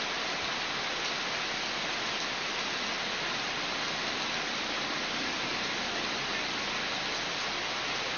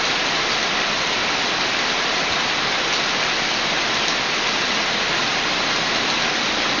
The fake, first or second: second